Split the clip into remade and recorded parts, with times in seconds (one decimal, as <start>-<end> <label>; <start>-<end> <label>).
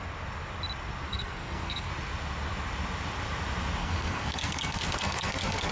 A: 0.0-1.1 recorded; 1.1-1.9 remade; 1.9-3.8 recorded; 3.8-5.7 remade